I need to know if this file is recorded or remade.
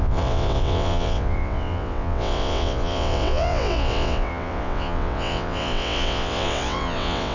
remade